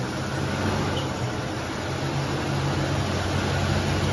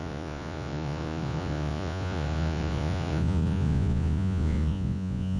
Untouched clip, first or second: first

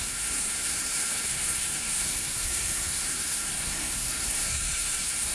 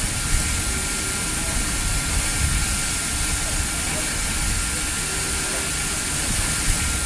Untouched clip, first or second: second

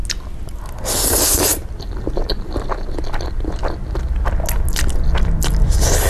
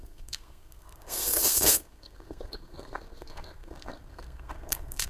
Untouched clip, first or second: first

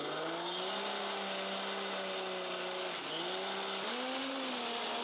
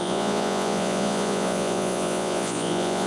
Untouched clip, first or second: first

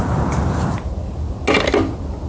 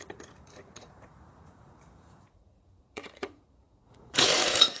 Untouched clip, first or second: first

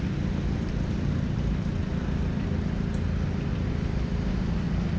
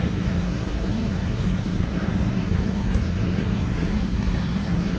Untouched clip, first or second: first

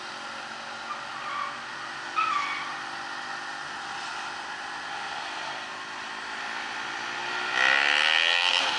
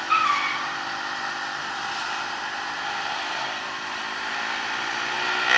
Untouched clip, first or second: first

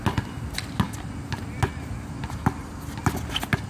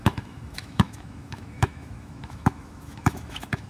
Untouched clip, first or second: first